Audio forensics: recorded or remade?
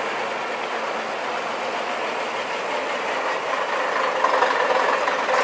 recorded